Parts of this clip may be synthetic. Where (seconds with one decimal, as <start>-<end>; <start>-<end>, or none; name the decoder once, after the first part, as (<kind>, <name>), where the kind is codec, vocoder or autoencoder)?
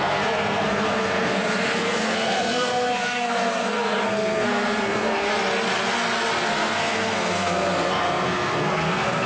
0.0-5.3 (codec, SNAC); 6.5-9.3